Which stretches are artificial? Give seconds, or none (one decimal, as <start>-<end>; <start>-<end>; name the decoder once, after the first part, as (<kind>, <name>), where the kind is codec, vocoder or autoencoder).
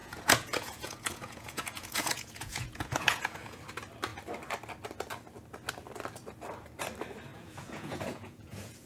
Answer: 0.0-3.6 (vocoder, Vocos); 7.3-8.9